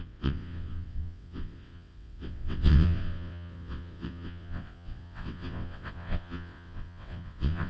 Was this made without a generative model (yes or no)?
no